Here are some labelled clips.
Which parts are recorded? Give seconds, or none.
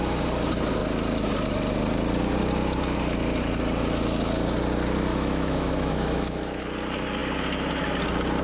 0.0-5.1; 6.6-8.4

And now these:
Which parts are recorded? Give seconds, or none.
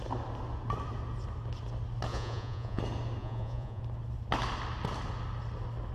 0.0-2.1; 2.8-3.2; 3.8-5.9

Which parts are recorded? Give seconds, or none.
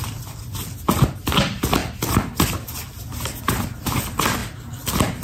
0.0-5.2